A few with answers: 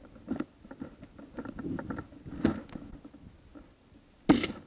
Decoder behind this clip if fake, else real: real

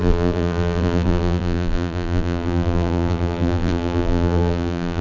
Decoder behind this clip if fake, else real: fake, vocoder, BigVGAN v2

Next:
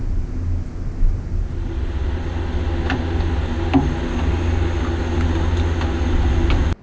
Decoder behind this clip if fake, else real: real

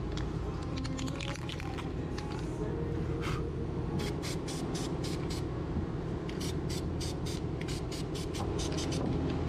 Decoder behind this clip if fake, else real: real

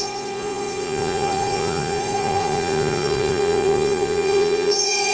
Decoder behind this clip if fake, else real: fake, vocoder, Vocos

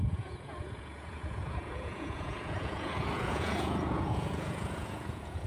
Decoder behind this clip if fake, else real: fake, vocoder, Vocos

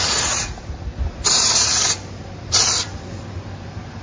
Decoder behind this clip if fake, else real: fake, vocoder, BigVGAN v2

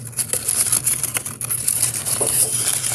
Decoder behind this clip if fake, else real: real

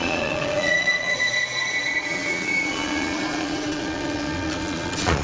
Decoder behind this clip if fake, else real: fake, vocoder, Vocos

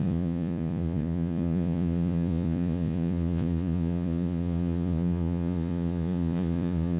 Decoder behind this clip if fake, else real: fake, vocoder, Vocos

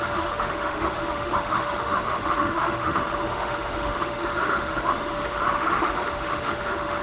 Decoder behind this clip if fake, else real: fake, autoencoder, DAC-VAE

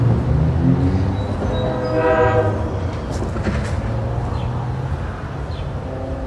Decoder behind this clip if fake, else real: real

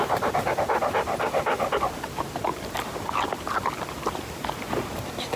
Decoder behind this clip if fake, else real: real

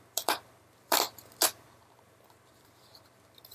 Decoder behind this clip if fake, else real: fake, vocoder, BigVGAN v2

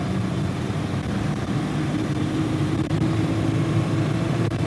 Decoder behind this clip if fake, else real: fake, vocoder, BigVGAN v2